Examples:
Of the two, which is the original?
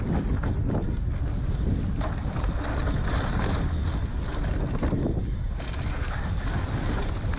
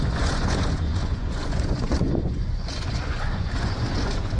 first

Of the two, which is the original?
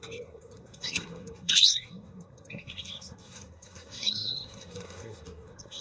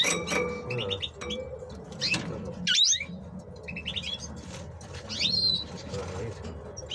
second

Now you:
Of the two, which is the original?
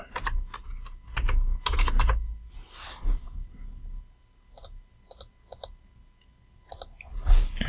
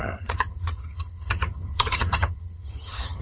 first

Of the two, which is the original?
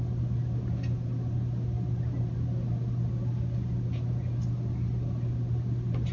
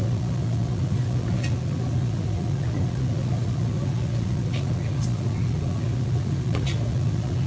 first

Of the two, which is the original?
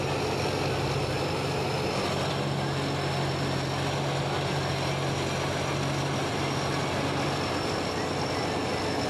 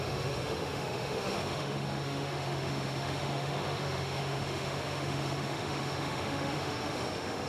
first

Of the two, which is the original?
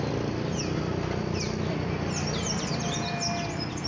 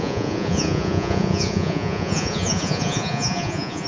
first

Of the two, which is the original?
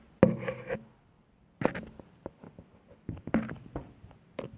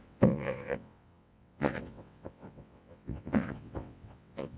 first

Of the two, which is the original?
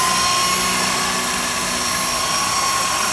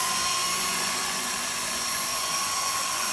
first